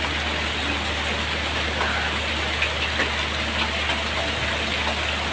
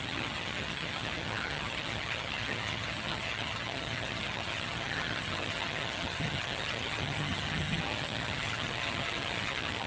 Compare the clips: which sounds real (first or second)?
first